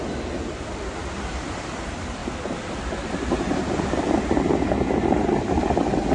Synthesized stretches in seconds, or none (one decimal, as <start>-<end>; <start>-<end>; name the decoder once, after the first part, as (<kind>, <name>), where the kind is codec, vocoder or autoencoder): none